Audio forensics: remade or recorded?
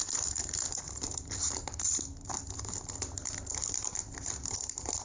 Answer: recorded